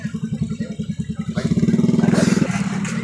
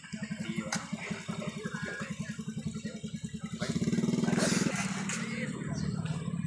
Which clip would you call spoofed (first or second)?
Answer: first